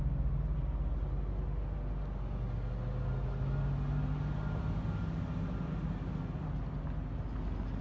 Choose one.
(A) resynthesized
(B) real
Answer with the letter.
B